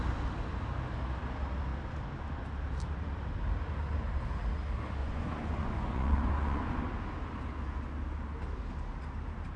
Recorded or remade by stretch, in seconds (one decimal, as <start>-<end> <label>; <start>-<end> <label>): 0.0-5.0 recorded; 5.0-6.8 remade; 6.8-9.6 recorded